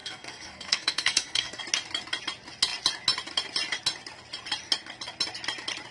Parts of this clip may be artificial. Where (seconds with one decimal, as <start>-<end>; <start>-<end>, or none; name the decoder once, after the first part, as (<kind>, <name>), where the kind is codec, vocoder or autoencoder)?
0.0-1.6 (codec, SNAC)